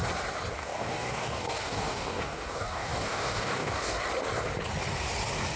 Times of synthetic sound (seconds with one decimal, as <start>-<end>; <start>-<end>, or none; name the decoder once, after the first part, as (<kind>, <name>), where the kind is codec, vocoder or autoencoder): 0.6-4.0 (codec, DAC)